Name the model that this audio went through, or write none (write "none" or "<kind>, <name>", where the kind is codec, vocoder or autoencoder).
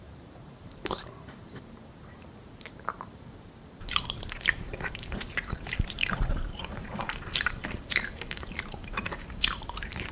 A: vocoder, BigVGAN v2